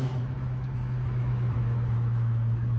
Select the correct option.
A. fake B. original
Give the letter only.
A